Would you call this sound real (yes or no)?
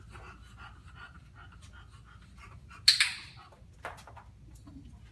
yes